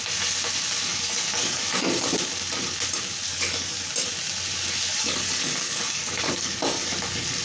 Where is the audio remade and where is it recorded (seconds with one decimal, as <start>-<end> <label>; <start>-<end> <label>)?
0.0-0.9 recorded; 0.9-2.2 remade; 2.2-3.3 recorded; 3.3-3.9 remade; 3.9-4.9 recorded; 4.9-6.9 remade; 6.9-7.4 recorded